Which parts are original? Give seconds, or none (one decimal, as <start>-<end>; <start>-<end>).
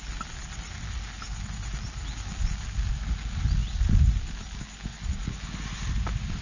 0.0-6.4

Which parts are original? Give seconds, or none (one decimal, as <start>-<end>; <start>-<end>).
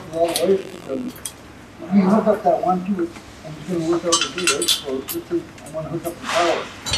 0.0-0.6; 1.1-7.0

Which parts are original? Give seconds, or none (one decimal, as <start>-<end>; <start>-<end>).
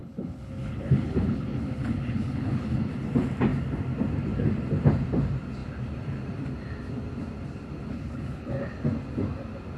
2.8-7.9; 8.6-9.8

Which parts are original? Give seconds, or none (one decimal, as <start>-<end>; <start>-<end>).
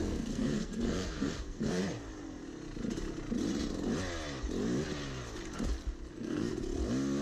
1.8-6.1; 6.5-7.2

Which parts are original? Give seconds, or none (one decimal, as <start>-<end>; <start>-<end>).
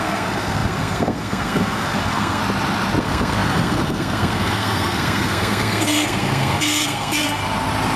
2.4-3.0; 7.4-8.0